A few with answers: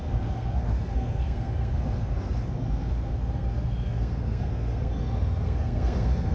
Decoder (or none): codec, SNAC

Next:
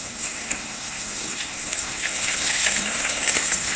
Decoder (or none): codec, SNAC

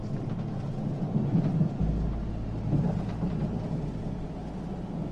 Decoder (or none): none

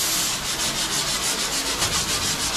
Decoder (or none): none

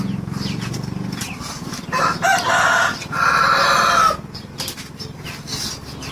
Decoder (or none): none